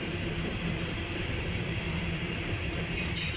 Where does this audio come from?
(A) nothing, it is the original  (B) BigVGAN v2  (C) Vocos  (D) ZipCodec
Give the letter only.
B